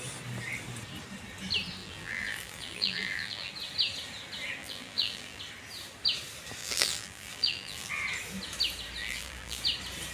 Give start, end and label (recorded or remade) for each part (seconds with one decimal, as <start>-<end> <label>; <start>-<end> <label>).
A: 0.0-1.8 recorded; 1.8-3.5 remade; 3.5-4.6 recorded; 4.6-5.4 remade; 5.4-6.6 recorded; 6.6-7.9 remade; 7.9-9.0 recorded; 9.0-9.6 remade; 9.6-10.1 recorded